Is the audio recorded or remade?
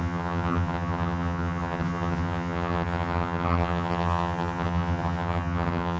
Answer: remade